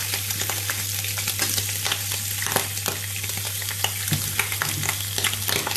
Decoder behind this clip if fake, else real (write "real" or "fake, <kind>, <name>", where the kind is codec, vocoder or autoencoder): real